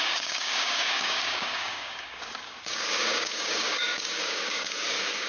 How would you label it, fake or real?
fake